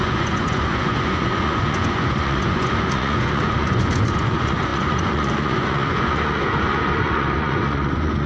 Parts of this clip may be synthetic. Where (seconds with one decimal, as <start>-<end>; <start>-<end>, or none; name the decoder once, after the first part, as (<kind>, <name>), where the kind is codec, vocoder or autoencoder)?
0.0-8.3 (vocoder, Vocos)